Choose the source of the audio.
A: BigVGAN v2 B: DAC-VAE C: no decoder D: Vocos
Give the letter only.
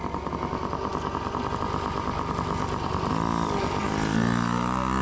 C